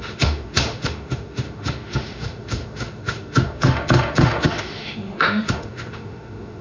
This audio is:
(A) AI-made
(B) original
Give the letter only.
A